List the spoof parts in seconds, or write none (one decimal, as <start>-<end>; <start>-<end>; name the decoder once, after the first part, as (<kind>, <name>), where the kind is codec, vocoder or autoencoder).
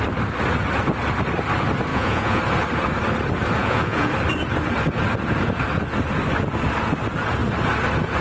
1.9-2.4 (vocoder, Vocos); 3.6-4.1